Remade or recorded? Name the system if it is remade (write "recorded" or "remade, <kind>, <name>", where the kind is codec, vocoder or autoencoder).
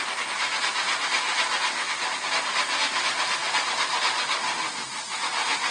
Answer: recorded